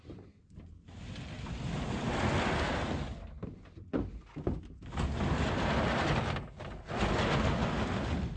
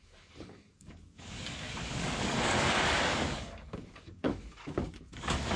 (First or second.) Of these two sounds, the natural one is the first